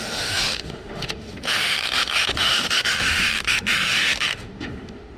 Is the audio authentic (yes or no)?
no